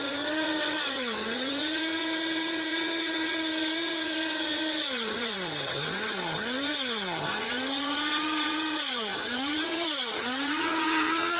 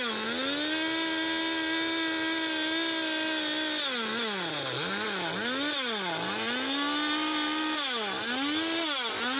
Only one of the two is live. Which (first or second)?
second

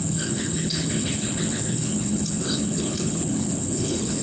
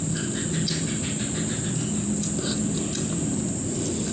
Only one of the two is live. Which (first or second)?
second